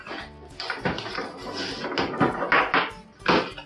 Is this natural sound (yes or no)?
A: yes